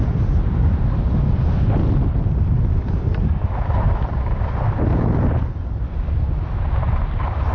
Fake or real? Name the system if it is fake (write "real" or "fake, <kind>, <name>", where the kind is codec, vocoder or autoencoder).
real